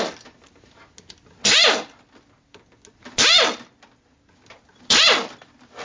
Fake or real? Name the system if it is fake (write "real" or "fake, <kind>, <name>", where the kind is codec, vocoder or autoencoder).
real